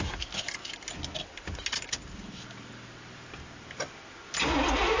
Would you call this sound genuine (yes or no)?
yes